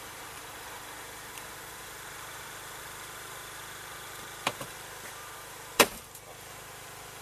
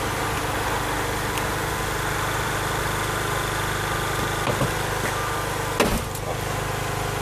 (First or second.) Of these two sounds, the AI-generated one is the first